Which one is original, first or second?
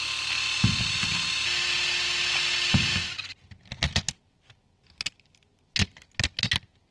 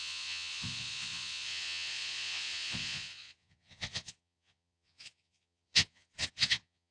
first